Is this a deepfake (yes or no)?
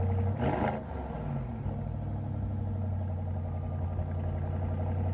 no